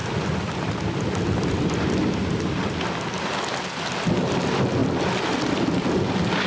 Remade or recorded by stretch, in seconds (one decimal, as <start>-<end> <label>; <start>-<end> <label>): 0.0-2.6 remade; 2.6-6.5 recorded